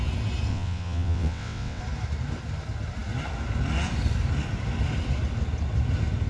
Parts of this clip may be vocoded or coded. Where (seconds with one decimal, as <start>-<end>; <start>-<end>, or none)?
0.5-1.8